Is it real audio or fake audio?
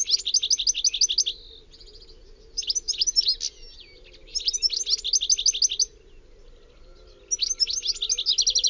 real